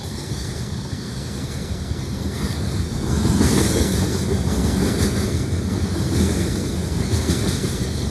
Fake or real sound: fake